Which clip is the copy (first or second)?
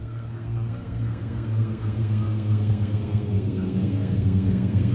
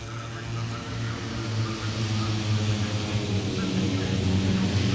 first